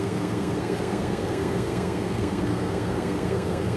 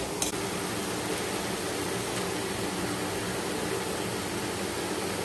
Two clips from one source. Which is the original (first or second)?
second